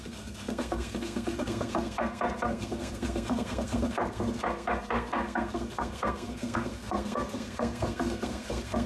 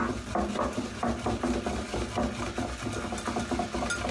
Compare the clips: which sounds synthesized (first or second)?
first